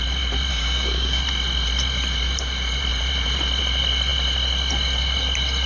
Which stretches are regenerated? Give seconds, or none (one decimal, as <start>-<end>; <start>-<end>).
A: 0.5-1.2